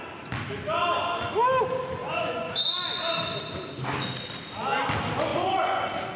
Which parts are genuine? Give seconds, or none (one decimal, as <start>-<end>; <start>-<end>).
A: 0.0-2.0; 2.5-5.3; 5.8-6.2